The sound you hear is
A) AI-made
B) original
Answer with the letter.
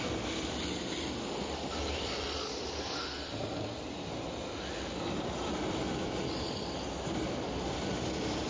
B